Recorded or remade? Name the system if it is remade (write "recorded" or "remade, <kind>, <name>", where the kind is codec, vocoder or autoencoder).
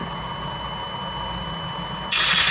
recorded